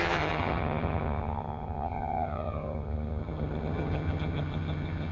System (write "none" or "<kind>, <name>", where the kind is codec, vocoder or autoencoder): vocoder, HiFi-GAN